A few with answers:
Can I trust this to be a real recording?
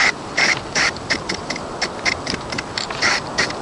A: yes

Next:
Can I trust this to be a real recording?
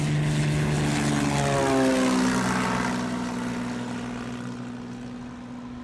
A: yes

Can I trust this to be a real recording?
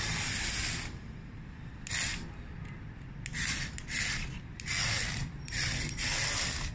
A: yes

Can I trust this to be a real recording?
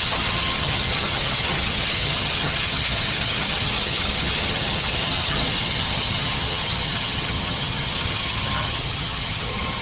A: no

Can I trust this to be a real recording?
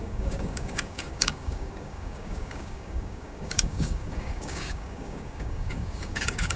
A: no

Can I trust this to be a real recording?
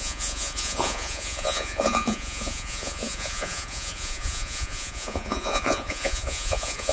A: no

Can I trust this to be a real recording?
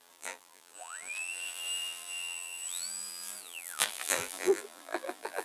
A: no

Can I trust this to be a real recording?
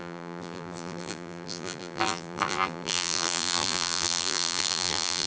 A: no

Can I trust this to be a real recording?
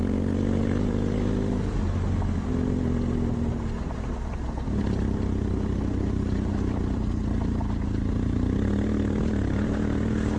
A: yes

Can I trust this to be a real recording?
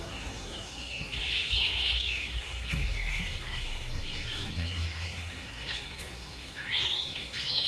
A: no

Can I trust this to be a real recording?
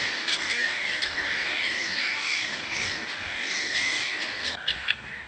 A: no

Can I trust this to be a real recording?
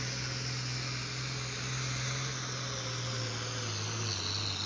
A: yes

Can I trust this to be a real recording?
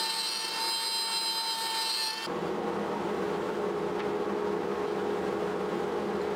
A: yes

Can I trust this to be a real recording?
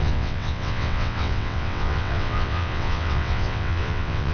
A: no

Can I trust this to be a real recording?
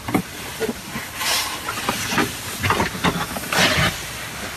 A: yes